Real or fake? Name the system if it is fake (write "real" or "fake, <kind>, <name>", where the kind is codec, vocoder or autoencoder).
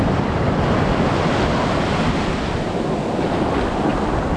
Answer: real